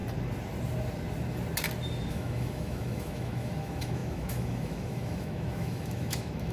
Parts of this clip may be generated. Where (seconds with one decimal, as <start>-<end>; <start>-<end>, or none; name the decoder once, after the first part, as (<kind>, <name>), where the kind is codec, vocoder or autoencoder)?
2.1-6.5 (autoencoder, DAC-VAE)